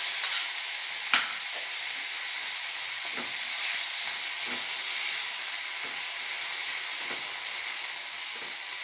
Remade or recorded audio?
recorded